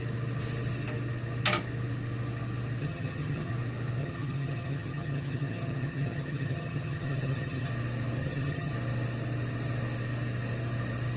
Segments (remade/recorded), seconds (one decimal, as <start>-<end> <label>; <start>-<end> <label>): 0.0-2.8 recorded; 2.8-3.5 remade; 3.5-4.0 recorded; 4.0-7.7 remade; 7.7-8.2 recorded; 8.2-8.7 remade; 8.7-11.2 recorded